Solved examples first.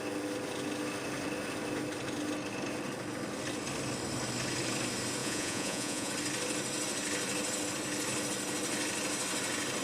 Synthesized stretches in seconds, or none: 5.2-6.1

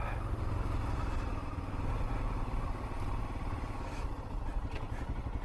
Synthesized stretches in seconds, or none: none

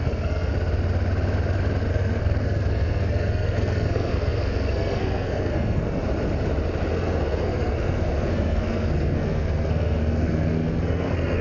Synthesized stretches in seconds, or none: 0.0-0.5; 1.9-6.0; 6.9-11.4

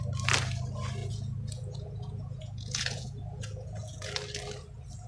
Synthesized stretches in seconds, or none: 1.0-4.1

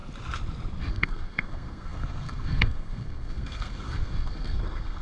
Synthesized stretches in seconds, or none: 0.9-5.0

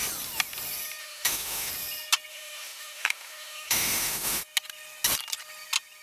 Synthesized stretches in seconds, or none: 1.0-1.7; 2.3-4.4

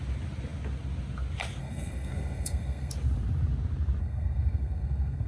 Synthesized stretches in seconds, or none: 1.6-2.9; 4.0-5.3

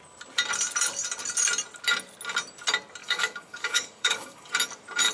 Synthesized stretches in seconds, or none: 3.0-4.5